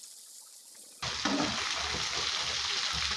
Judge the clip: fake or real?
real